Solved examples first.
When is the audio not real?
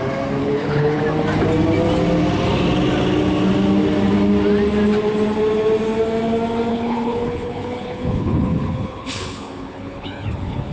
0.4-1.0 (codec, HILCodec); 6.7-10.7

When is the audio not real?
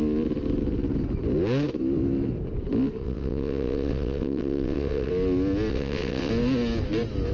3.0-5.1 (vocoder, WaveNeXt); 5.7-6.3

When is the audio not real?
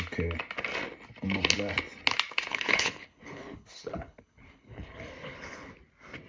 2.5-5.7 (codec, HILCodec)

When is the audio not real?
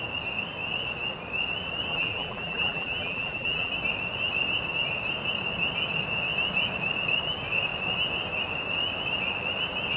1.9-3.7 (vocoder, BigVGAN v2)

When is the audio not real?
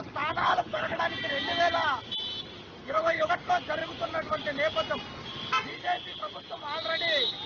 0.4-1.0 (codec, HILCodec); 2.8-3.3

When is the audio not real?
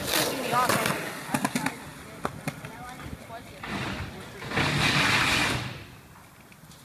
none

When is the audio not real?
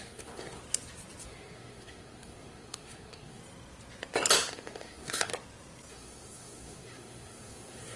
0.0-0.6 (codec, SNAC); 1.2-3.4; 4.5-5.3; 5.9-8.0